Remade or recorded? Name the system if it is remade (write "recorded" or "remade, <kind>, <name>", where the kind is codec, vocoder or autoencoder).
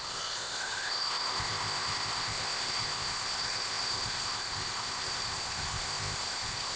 remade, codec, ZipCodec